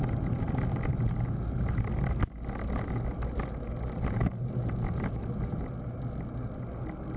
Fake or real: real